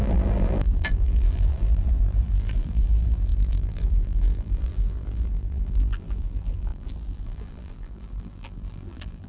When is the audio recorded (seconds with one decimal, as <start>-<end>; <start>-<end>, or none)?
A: none